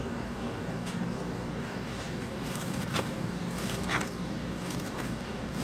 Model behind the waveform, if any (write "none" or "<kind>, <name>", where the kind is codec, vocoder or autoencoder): codec, DAC